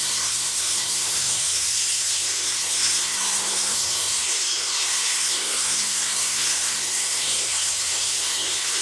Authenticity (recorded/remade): remade